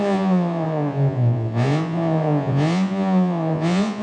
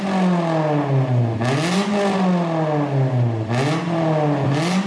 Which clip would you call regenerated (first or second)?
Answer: first